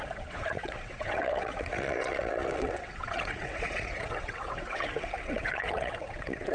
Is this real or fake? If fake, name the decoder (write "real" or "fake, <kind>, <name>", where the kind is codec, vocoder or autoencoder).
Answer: fake, vocoder, WaveNeXt